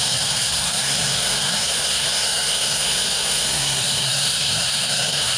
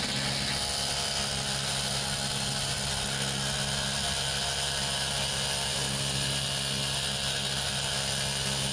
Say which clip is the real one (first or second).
second